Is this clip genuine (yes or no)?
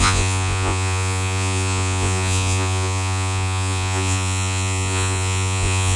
no